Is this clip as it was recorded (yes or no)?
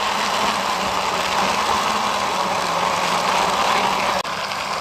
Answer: yes